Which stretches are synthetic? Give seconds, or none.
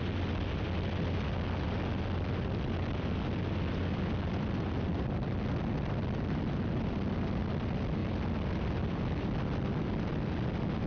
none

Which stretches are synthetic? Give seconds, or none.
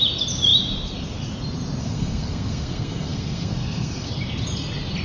1.8-4.1 (codec, SNAC)